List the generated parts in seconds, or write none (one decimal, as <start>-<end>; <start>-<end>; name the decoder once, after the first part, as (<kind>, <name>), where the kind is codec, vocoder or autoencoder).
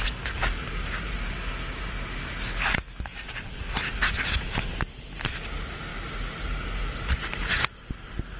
none